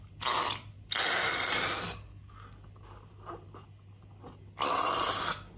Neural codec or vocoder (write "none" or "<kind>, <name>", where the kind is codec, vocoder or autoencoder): none